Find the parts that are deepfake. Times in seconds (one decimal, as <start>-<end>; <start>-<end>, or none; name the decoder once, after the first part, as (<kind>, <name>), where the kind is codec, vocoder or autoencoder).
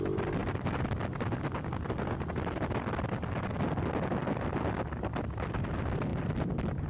6.1-6.9 (vocoder, BigVGAN v2)